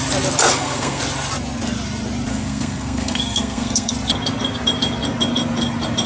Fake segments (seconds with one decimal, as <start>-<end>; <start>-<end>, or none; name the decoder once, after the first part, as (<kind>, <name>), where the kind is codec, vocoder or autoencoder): 0.4-1.0 (codec, SNAC); 2.3-3.9